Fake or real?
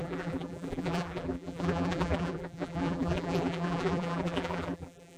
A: fake